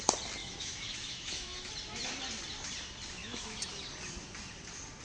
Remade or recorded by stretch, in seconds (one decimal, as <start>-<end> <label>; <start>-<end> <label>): 0.0-0.4 recorded; 0.4-1.7 remade; 1.7-3.2 recorded; 3.2-3.7 remade; 3.7-5.0 recorded